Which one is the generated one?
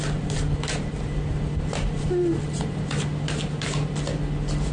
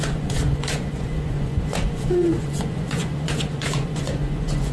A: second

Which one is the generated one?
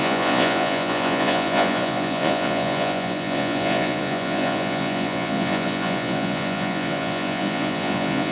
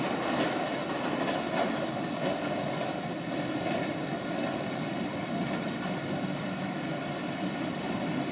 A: first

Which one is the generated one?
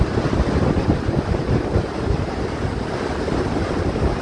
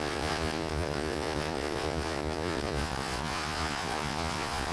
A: second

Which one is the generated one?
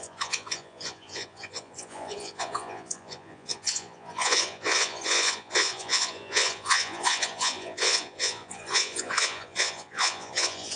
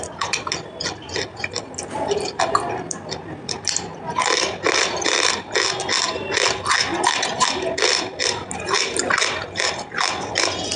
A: first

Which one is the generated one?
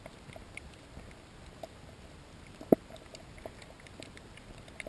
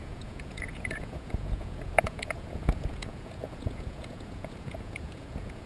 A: second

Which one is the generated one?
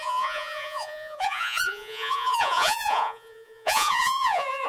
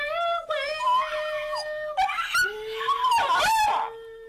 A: first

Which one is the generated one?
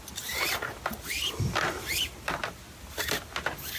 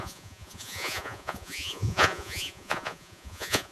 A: second